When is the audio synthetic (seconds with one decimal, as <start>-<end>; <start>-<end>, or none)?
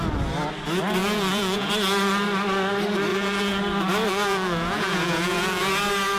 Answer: 1.0-1.7; 3.1-3.6; 4.1-5.6